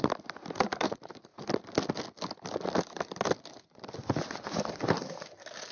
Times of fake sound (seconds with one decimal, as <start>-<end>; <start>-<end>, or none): 0.0-1.3; 4.7-5.7